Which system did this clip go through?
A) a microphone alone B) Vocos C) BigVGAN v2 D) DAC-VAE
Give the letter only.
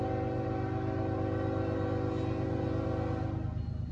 A